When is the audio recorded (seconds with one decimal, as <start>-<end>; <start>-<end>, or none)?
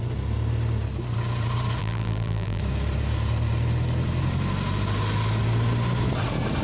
0.0-1.8; 2.6-6.6